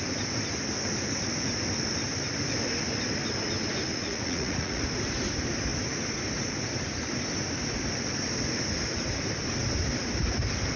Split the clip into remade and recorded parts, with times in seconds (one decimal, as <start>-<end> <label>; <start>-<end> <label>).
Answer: 0.0-3.9 recorded; 3.9-4.8 remade; 4.8-10.8 recorded